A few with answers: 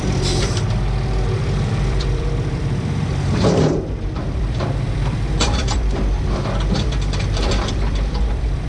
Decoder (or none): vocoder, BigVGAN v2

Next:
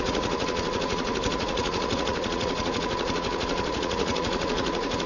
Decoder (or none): vocoder, Vocos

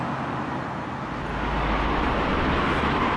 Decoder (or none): none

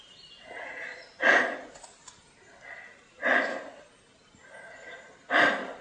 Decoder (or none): none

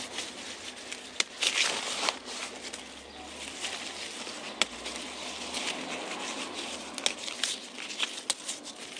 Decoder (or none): none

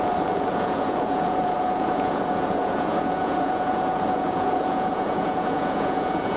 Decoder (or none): vocoder, Vocos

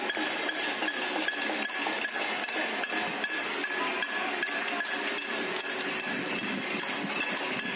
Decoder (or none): none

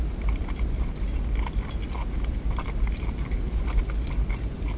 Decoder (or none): none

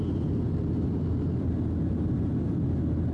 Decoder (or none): none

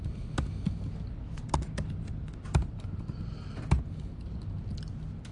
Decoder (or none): none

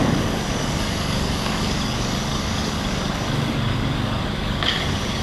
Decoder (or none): codec, DAC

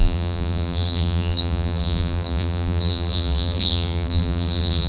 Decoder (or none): vocoder, BigVGAN v2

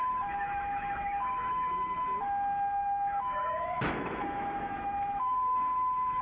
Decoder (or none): autoencoder, DAC-VAE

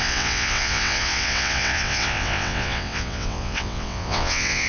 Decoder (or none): vocoder, WaveNeXt